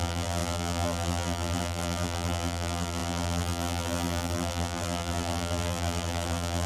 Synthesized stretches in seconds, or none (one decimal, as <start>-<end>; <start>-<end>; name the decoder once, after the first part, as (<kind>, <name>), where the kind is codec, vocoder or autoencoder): 0.0-6.7 (vocoder, BigVGAN v2)